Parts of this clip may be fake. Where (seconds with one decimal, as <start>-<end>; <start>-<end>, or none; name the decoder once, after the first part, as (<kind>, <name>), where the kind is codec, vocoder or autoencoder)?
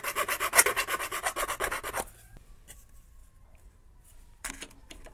3.2-4.5 (vocoder, BigVGAN v2)